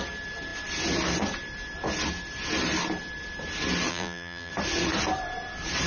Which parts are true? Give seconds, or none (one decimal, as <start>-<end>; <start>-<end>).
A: 0.0-3.9; 4.5-5.9